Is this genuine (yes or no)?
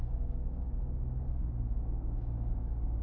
no